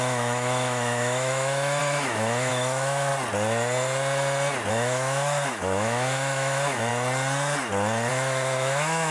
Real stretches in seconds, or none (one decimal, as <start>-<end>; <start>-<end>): 3.1-4.7; 6.9-8.1